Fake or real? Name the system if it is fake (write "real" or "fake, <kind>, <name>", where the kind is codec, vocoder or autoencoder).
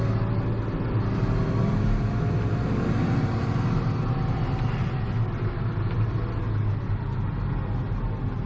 real